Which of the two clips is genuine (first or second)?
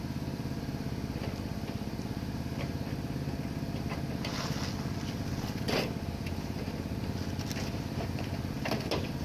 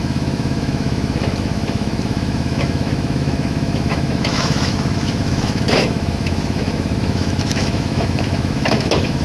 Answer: first